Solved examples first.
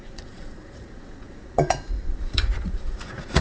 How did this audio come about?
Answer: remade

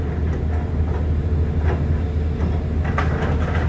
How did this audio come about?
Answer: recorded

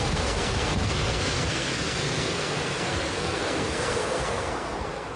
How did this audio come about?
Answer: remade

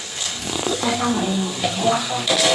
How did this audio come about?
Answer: remade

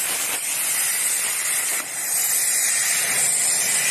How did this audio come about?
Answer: recorded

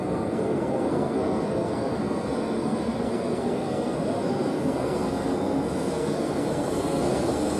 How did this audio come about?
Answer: remade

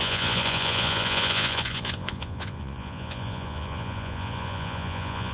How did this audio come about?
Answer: remade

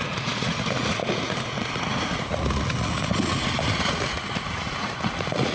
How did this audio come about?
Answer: remade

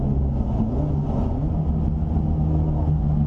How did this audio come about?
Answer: recorded